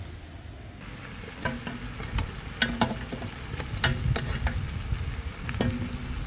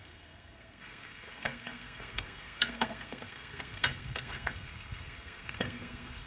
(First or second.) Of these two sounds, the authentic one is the first